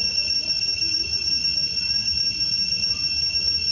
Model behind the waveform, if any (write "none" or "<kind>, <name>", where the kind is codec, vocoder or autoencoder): none